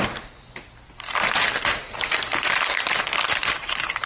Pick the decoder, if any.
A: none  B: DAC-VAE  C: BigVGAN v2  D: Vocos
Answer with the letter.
C